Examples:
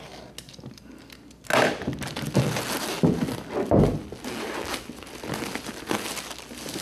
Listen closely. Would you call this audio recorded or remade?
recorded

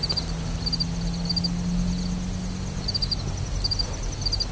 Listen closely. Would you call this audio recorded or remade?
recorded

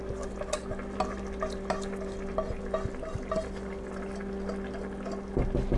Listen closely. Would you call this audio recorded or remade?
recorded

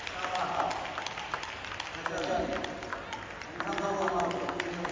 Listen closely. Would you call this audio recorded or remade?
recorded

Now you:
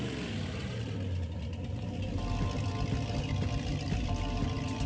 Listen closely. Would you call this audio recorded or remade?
recorded